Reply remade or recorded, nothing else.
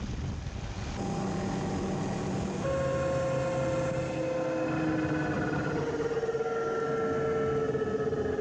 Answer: recorded